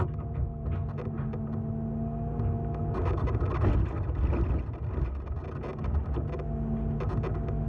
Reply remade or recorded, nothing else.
recorded